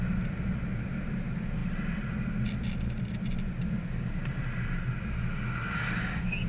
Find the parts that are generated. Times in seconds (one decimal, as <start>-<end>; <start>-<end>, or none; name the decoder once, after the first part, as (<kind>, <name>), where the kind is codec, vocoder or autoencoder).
none